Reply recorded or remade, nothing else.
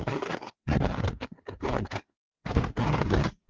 remade